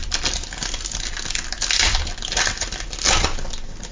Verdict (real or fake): real